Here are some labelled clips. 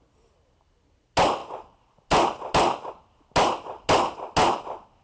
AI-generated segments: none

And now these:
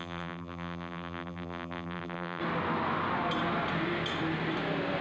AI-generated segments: 0.0-2.4 (vocoder, BigVGAN v2)

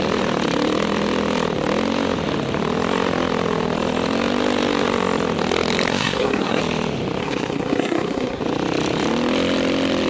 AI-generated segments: 5.9-6.6 (codec, SNAC); 7.2-8.4